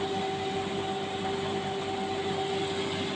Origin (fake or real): real